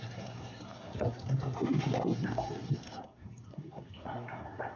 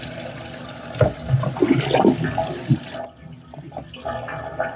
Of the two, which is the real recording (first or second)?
second